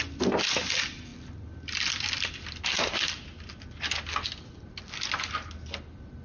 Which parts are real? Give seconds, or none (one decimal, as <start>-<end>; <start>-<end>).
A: 0.0-6.2